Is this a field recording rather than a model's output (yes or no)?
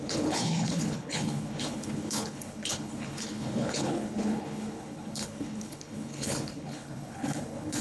no